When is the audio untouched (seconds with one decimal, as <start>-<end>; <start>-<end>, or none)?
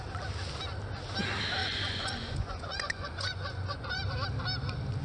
0.0-1.6; 4.0-5.0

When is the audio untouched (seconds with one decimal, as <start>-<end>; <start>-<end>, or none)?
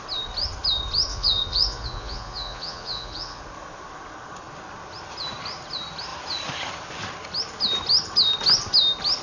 0.0-1.1; 3.4-9.2